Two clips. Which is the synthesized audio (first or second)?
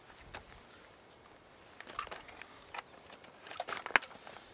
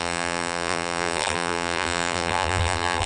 second